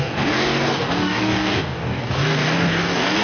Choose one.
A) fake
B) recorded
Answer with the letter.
A